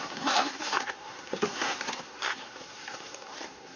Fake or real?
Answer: fake